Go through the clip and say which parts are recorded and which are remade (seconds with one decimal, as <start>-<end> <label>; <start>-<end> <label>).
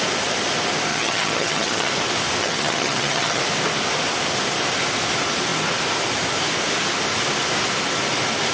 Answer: 0.0-0.9 recorded; 0.9-1.9 remade; 1.9-2.4 recorded; 2.4-3.4 remade; 3.4-8.5 recorded